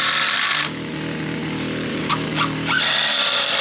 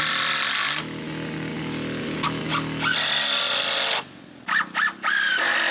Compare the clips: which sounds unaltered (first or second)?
second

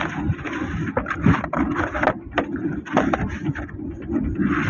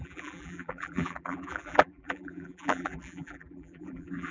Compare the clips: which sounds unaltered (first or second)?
first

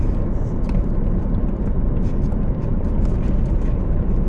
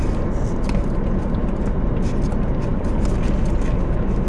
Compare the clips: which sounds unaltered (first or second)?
second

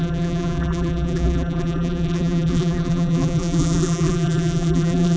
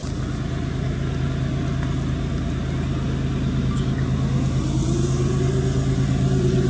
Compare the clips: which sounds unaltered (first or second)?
second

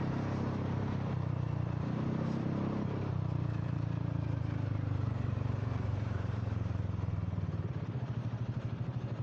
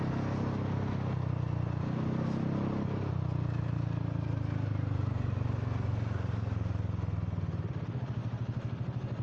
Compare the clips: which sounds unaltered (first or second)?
second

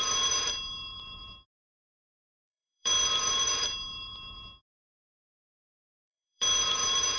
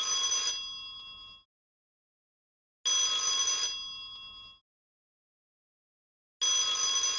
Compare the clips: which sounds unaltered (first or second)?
second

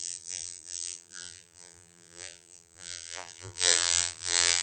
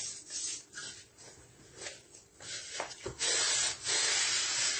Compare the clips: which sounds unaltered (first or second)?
second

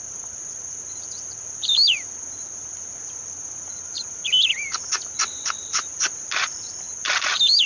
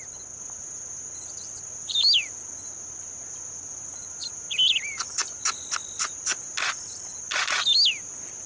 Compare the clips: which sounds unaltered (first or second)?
second